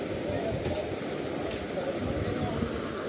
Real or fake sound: real